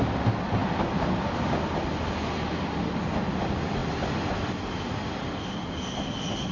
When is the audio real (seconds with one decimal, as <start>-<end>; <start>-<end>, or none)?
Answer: 0.0-6.5